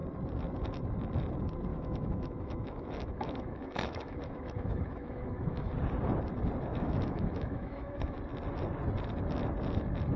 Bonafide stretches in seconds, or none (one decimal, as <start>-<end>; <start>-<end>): 0.0-1.7; 5.7-6.7; 8.2-10.2